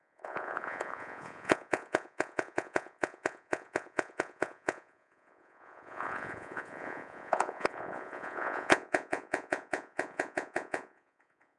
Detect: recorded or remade remade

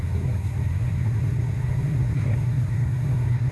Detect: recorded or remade remade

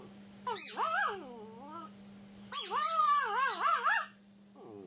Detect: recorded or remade recorded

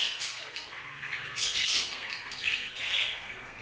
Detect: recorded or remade remade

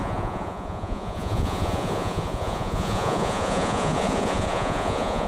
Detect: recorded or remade remade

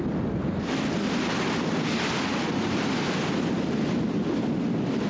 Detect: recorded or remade recorded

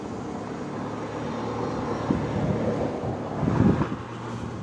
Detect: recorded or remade recorded